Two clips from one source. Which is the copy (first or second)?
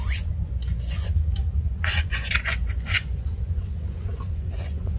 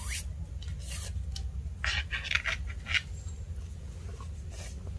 first